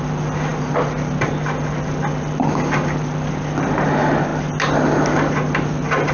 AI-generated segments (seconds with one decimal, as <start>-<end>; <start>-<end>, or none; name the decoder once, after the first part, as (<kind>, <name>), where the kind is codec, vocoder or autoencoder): none